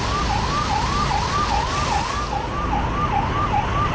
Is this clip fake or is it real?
real